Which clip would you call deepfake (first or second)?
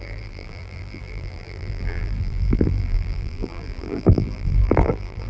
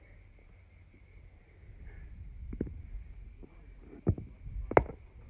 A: first